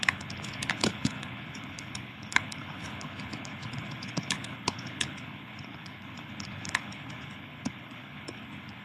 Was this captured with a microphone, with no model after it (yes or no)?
no